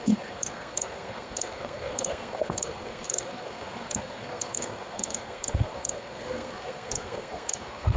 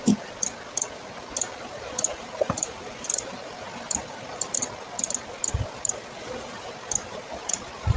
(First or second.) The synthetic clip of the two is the first